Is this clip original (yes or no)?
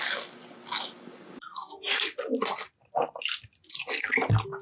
yes